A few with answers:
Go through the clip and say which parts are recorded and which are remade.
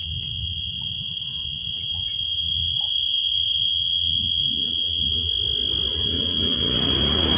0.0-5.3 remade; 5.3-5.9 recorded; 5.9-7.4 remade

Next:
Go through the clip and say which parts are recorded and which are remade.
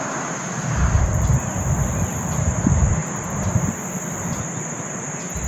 0.0-5.5 recorded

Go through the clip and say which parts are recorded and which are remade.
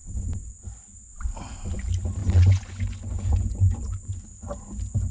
0.0-2.2 recorded; 2.2-4.1 remade; 4.1-5.1 recorded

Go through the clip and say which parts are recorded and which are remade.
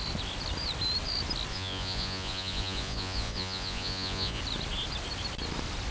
0.0-1.5 recorded; 1.5-4.4 remade; 4.4-5.9 recorded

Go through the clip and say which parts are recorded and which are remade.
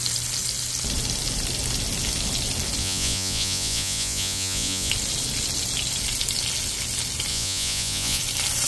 0.0-2.8 recorded; 2.8-4.9 remade; 4.9-7.3 recorded; 7.3-8.2 remade; 8.2-8.7 recorded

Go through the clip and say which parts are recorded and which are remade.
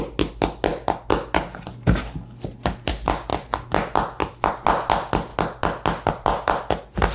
0.0-7.1 recorded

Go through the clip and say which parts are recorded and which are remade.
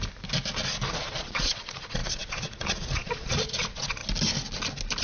0.0-0.9 recorded; 0.9-4.0 remade; 4.0-5.0 recorded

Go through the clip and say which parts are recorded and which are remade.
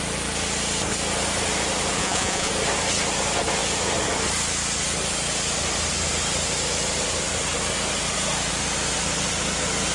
0.0-2.0 recorded; 2.0-2.5 remade; 2.5-9.9 recorded